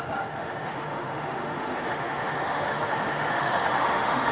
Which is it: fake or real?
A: fake